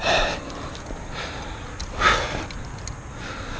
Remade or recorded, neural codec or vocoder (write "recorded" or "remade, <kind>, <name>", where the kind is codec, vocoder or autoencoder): recorded